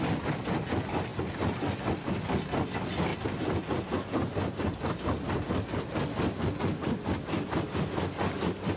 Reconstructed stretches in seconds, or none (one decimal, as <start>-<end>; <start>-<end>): none